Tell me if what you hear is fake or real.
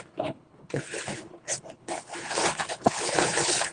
fake